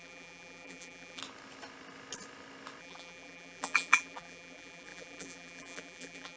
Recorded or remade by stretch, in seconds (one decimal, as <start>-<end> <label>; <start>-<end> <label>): 0.0-1.2 remade; 1.2-2.8 recorded; 2.8-6.4 remade